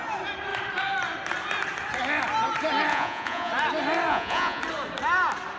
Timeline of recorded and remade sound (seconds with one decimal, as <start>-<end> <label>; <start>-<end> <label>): 0.0-2.9 recorded; 2.9-3.5 remade; 3.5-4.1 recorded; 4.1-4.6 remade; 4.6-5.6 recorded